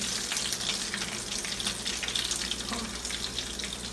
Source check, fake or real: real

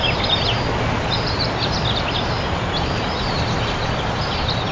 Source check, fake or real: real